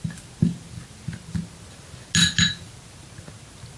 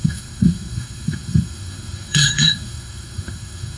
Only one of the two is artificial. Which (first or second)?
second